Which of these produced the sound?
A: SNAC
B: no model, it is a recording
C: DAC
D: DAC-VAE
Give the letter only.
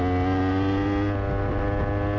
B